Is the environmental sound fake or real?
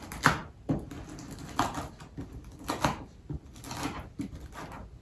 real